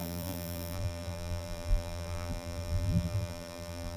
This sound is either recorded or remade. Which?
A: remade